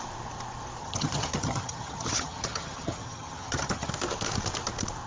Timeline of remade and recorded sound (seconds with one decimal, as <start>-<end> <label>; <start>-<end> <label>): 0.0-0.8 recorded; 0.8-3.9 remade; 3.9-5.1 recorded